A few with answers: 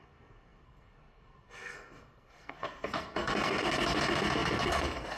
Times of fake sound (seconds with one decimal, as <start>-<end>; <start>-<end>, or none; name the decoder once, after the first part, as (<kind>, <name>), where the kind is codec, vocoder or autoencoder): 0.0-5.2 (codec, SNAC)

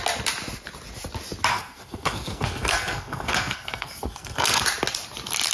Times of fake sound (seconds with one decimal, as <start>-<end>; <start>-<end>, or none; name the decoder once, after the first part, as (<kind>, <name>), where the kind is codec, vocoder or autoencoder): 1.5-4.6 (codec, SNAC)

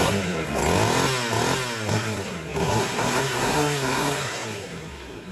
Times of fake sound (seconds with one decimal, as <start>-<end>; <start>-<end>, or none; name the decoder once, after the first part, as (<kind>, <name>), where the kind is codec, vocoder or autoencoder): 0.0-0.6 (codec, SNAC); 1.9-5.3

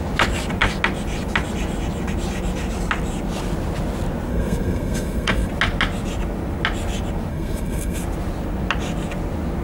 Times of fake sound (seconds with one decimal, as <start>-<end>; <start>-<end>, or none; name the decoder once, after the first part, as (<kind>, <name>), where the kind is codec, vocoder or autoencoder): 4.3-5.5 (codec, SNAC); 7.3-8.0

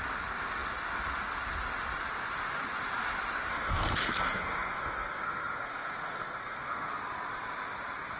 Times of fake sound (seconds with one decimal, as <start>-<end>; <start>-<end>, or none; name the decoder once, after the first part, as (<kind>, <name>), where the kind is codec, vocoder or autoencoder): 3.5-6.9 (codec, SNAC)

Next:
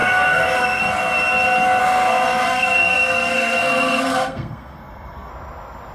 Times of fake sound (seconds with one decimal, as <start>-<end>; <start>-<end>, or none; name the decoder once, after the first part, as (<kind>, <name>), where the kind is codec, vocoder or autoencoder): 0.0-0.8 (codec, SNAC); 1.8-5.3

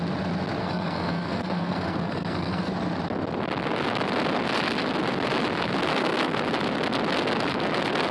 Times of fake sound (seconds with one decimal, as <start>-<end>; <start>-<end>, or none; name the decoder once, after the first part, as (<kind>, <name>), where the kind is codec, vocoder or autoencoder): 0.6-2.7 (codec, SNAC); 5.9-6.4

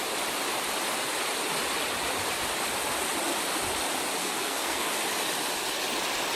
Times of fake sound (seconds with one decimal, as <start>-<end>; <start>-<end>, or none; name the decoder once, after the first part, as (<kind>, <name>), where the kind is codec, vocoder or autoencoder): 4.2-4.9 (codec, SNAC)